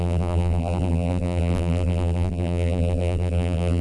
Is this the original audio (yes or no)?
no